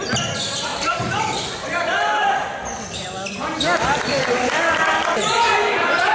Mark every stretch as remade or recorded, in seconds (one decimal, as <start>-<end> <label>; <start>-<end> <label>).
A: 0.0-6.1 recorded